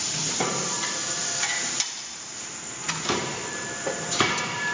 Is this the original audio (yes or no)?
no